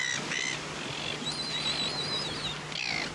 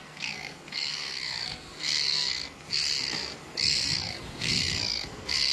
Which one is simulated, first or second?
second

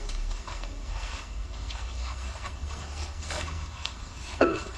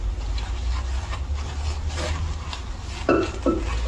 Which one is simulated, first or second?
first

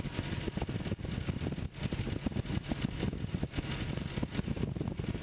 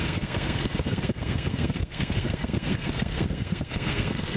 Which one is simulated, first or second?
second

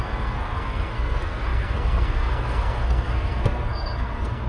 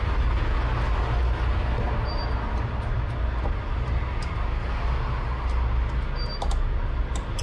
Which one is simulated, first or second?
first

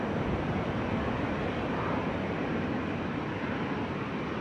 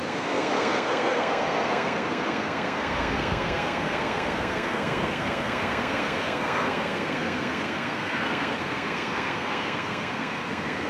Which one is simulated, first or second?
second